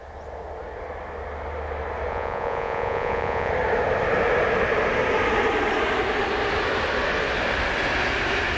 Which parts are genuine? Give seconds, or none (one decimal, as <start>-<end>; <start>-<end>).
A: 0.0-2.1; 3.5-8.6